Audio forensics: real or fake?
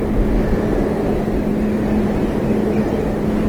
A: real